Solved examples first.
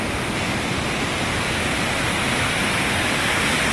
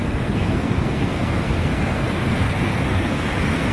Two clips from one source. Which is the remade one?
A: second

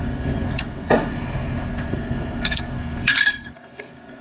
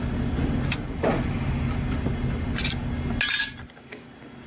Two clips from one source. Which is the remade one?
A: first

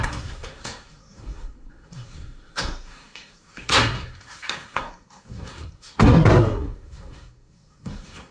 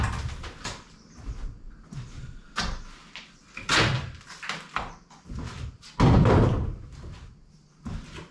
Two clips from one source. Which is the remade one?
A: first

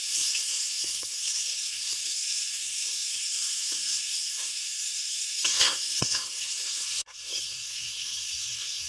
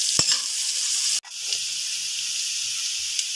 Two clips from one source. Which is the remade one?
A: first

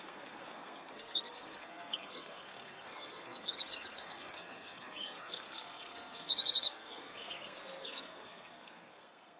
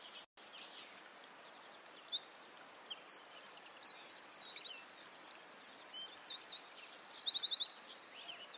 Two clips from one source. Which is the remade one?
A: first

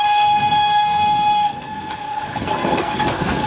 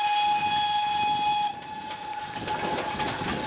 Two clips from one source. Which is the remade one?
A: first